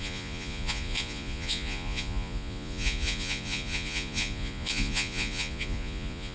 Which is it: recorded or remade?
remade